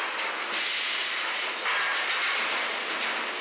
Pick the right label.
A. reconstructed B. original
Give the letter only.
B